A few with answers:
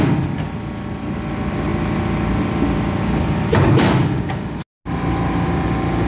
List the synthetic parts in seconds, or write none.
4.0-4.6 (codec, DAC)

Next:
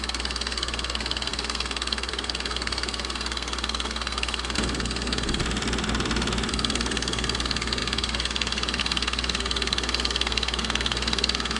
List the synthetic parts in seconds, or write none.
0.0-5.4 (codec, SNAC); 6.5-11.6

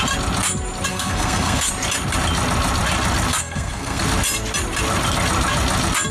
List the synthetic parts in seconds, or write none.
0.9-1.7 (codec, SNAC); 3.3-4.0